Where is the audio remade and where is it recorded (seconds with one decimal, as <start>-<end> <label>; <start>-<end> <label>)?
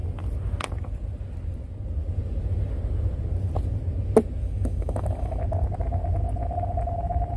0.0-4.4 recorded; 4.4-5.4 remade; 5.4-7.4 recorded